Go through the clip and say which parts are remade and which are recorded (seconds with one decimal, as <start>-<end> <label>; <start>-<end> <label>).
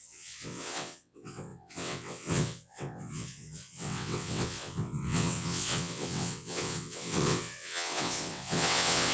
0.0-9.1 remade